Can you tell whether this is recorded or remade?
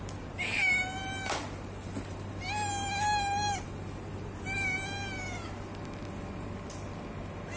recorded